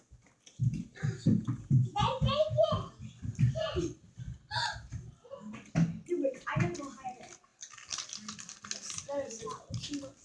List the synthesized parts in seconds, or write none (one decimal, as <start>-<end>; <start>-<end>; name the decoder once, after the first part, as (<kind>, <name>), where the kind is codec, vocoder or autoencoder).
7.5-8.5 (vocoder, BigVGAN v2)